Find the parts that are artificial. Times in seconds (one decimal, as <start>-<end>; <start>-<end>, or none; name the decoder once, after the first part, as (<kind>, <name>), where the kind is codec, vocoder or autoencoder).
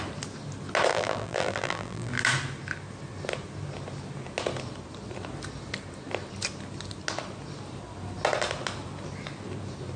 0.9-2.1 (vocoder, BigVGAN v2)